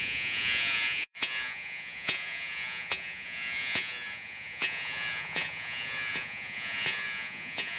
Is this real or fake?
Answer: fake